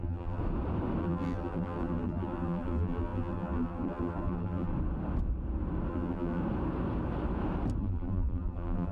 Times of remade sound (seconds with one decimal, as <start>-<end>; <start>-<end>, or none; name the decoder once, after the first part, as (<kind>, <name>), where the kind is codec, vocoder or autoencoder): 0.0-0.4 (vocoder, BigVGAN v2); 1.0-4.7; 5.9-6.4; 7.8-8.9